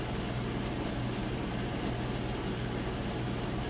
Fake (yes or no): no